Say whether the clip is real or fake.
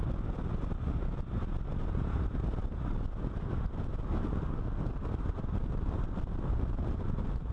real